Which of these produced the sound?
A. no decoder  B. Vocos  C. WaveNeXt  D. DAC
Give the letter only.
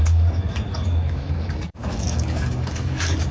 D